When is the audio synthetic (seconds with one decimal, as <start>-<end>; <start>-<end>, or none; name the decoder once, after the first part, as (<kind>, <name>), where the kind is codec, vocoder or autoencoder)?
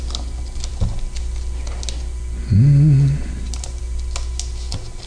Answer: none